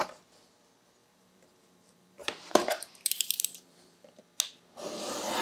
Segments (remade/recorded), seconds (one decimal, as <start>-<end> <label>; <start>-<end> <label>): 0.0-1.0 recorded; 1.0-4.2 remade; 4.2-5.4 recorded